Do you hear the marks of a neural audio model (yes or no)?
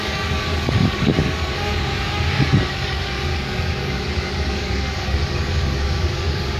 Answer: yes